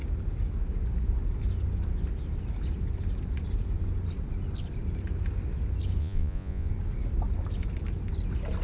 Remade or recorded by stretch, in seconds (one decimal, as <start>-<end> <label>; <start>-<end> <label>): 0.0-6.0 recorded; 6.0-6.7 remade; 6.7-8.6 recorded

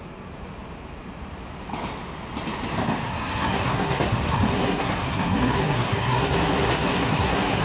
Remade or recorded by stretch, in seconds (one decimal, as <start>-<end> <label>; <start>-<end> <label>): 0.0-3.1 recorded; 3.1-7.6 remade

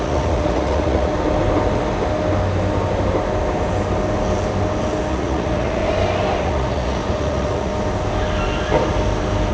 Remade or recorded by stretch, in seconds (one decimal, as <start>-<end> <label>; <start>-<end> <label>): 0.0-1.1 remade; 1.1-5.1 recorded; 5.1-5.8 remade; 5.8-6.4 recorded; 6.4-7.7 remade; 7.7-9.5 recorded

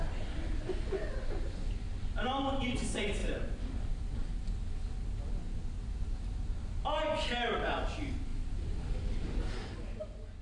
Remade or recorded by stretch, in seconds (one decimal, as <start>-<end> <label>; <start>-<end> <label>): 0.0-8.3 recorded; 8.3-9.1 remade; 9.1-10.4 recorded

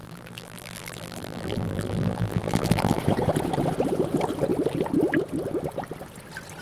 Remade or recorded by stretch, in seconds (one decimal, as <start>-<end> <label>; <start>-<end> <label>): 0.0-3.0 remade; 3.0-6.6 recorded

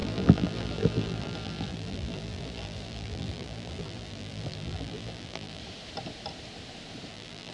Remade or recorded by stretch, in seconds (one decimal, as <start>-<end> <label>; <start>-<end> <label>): 0.0-5.6 remade; 5.6-7.1 recorded; 7.1-7.5 remade

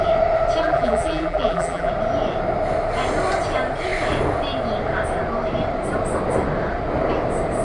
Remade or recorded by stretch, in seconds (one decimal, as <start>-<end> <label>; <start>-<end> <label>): 0.0-0.6 recorded; 0.6-1.9 remade; 1.9-7.6 recorded

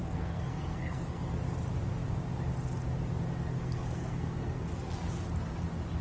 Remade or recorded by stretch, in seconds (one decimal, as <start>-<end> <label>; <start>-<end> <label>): 0.0-1.4 remade; 1.4-3.5 recorded; 3.5-5.1 remade; 5.1-6.0 recorded